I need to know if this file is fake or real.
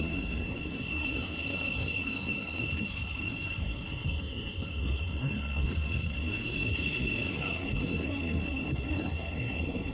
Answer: fake